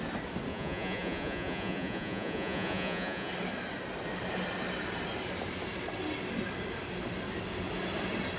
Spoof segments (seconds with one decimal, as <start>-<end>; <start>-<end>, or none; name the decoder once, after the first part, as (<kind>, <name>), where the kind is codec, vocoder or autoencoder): 0.5-3.3 (vocoder, Vocos)